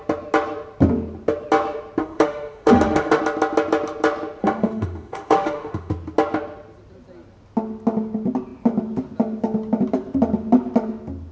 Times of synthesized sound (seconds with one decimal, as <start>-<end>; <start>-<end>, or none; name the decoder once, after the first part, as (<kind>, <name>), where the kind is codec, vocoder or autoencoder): 2.0-3.2 (autoencoder, DAC-VAE); 4.4-5.9